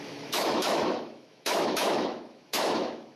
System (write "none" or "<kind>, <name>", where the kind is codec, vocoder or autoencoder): autoencoder, DAC-VAE